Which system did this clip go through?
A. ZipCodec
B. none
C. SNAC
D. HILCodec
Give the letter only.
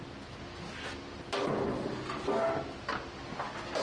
B